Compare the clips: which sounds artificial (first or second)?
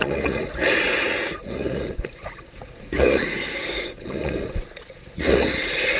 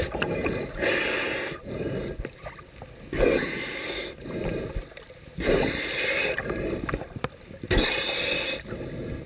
first